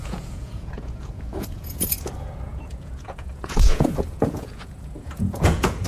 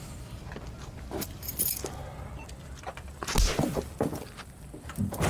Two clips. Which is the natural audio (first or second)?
second